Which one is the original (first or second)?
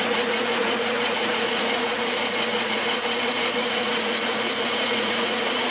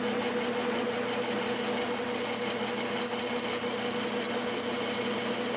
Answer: second